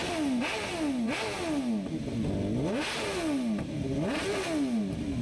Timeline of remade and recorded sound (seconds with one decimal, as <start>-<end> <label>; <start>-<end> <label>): 0.0-5.2 recorded